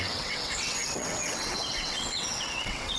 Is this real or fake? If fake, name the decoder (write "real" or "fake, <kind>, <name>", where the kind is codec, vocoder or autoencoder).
fake, vocoder, WaveNeXt